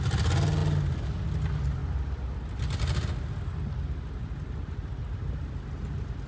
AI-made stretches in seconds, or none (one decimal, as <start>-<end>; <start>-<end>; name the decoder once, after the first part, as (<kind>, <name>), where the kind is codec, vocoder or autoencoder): none